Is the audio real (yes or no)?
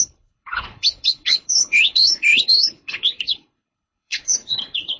no